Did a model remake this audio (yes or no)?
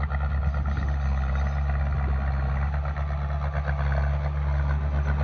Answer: no